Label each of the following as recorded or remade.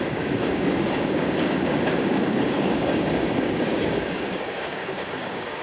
remade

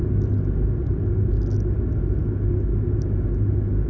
recorded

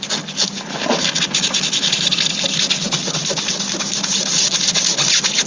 recorded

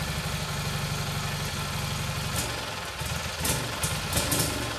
recorded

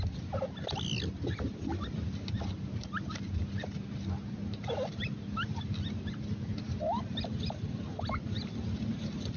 recorded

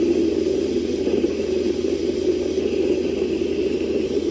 recorded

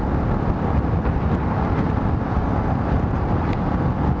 recorded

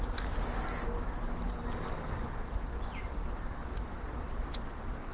recorded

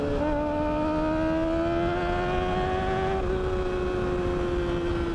recorded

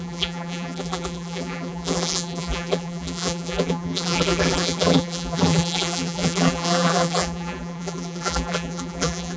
remade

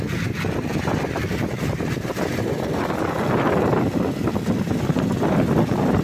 recorded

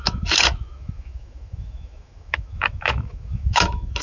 remade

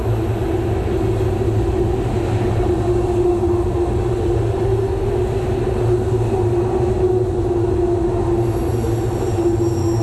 recorded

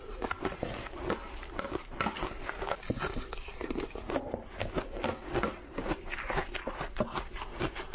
recorded